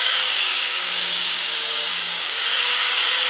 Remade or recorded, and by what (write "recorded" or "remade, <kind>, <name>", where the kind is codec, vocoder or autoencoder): remade, codec, DAC